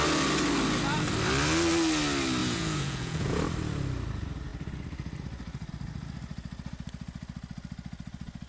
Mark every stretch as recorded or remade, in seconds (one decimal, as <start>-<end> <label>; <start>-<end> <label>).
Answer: 0.0-2.4 recorded; 2.4-3.4 remade; 3.4-8.5 recorded